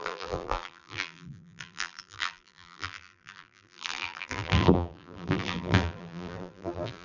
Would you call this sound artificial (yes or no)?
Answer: yes